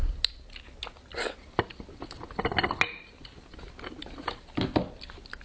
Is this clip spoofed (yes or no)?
no